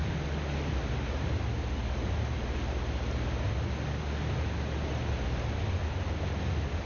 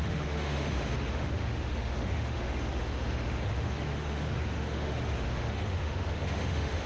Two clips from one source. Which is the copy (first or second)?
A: second